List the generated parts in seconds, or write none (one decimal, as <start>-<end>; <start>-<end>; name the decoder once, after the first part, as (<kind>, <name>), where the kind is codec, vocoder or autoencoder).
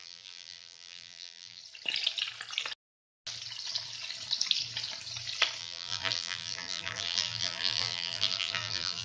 0.0-1.6 (vocoder, BigVGAN v2); 5.6-9.0